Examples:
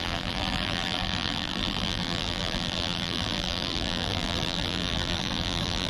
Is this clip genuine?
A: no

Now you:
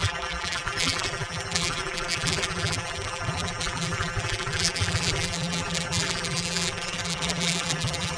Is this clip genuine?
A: no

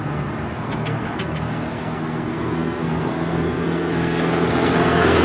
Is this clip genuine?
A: no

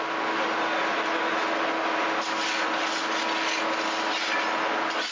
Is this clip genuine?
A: yes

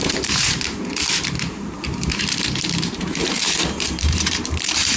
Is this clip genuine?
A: no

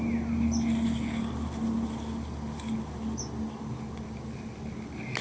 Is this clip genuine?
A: yes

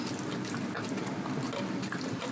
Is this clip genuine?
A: yes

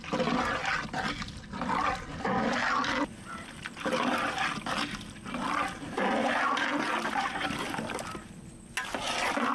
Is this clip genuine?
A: yes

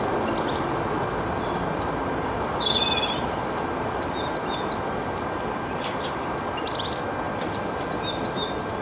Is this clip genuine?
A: yes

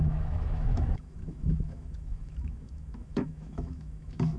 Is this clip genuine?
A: no